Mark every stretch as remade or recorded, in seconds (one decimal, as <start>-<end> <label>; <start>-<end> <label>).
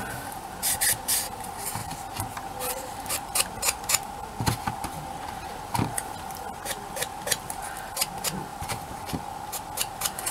0.0-8.5 recorded; 8.5-9.2 remade; 9.2-10.3 recorded